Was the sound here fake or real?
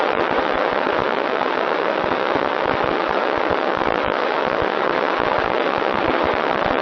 fake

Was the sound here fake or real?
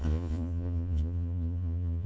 fake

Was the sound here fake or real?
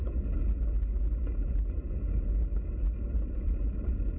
real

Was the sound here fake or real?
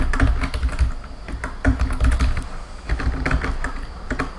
real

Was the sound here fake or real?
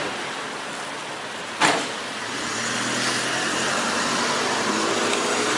real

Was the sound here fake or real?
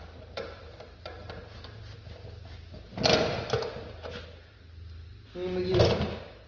real